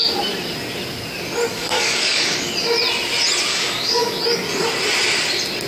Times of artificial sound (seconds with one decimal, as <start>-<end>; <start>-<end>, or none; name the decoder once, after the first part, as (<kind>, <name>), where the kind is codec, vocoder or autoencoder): 1.5-2.5 (codec, DAC); 3.5-4.2